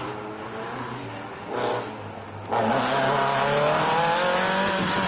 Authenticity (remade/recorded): recorded